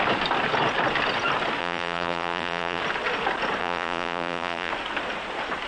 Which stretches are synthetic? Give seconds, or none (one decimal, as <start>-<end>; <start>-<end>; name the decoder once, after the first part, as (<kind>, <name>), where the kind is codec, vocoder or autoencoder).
1.6-2.8 (vocoder, BigVGAN v2); 3.6-4.7